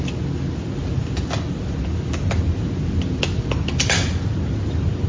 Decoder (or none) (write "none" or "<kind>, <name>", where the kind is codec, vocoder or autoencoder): none